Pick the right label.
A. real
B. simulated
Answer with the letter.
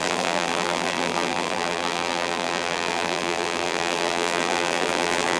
B